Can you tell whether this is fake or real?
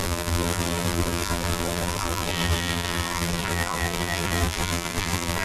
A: fake